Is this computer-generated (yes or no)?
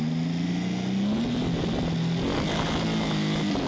no